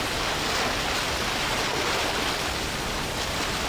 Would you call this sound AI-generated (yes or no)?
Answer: no